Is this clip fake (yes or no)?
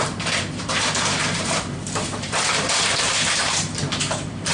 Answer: yes